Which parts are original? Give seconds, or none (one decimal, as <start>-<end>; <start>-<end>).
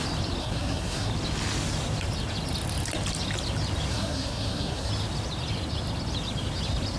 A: 0.0-0.4; 1.1-3.9; 4.9-7.0